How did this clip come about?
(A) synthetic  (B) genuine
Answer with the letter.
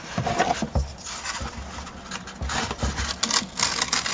B